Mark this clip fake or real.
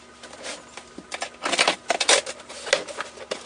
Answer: real